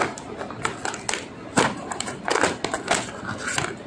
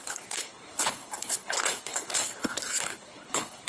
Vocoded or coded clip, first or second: second